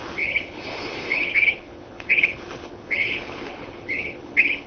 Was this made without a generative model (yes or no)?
no